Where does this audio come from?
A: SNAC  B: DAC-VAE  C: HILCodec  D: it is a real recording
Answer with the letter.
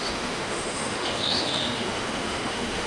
B